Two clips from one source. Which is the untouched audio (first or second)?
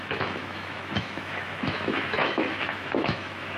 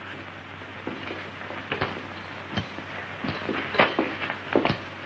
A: second